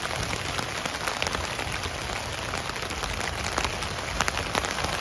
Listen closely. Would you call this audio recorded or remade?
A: recorded